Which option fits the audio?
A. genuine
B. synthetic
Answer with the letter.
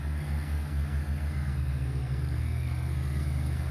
B